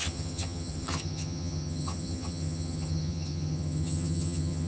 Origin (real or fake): fake